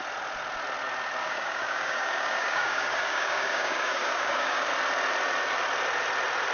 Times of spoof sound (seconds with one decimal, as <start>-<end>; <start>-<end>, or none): 1.2-4.7